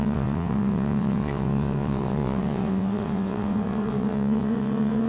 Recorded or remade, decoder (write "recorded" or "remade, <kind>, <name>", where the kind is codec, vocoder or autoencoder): remade, vocoder, WaveNeXt